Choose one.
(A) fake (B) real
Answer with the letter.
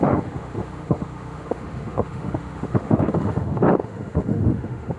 A